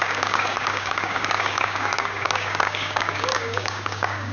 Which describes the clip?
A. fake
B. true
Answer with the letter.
A